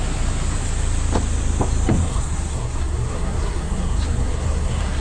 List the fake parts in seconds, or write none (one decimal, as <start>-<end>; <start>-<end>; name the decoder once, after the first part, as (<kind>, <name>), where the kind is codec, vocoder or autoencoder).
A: 2.0-5.0 (codec, SNAC)